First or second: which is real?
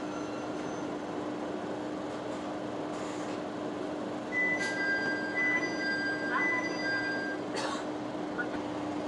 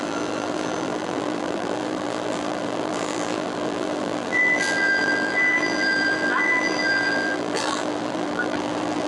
first